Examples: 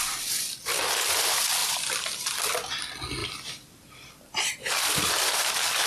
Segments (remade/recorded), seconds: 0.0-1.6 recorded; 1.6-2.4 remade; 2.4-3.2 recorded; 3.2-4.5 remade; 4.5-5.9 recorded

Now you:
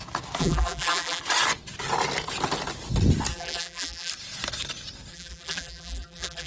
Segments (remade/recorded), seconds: 0.0-0.4 recorded; 0.4-1.2 remade; 1.2-3.3 recorded; 3.3-4.1 remade; 4.1-5.1 recorded; 5.1-6.5 remade